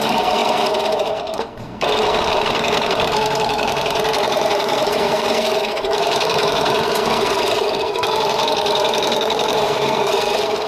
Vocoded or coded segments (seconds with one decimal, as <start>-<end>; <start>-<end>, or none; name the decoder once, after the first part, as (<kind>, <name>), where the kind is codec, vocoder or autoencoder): 0.0-10.7 (codec, SNAC)